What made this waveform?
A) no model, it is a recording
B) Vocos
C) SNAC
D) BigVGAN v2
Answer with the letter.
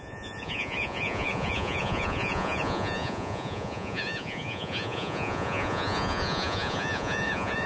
B